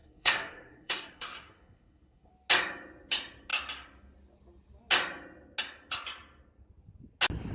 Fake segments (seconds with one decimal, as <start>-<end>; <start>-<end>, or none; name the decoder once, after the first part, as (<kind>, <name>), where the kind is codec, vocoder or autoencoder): 0.0-2.3 (codec, SNAC)